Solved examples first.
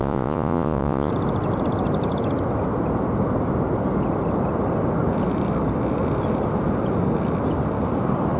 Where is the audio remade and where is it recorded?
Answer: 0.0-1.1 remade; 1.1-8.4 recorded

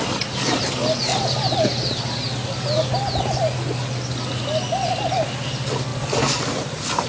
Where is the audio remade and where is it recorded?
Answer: 0.0-7.1 recorded

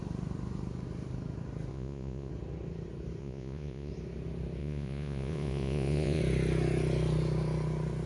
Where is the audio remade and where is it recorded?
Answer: 0.0-1.7 recorded; 1.7-2.3 remade; 2.3-3.2 recorded; 3.2-3.9 remade; 3.9-4.6 recorded; 4.6-6.2 remade; 6.2-8.1 recorded

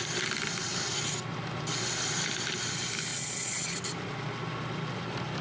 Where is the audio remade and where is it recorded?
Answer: 0.0-3.1 recorded; 3.1-3.8 remade; 3.8-5.4 recorded

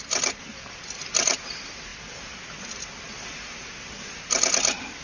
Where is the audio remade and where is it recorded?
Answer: 0.0-5.0 recorded

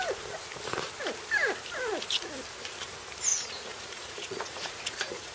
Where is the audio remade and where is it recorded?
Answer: 0.0-3.3 recorded; 3.3-5.3 remade

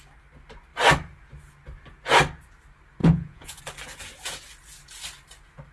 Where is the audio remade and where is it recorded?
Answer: 0.0-3.0 recorded; 3.0-3.6 remade; 3.6-5.7 recorded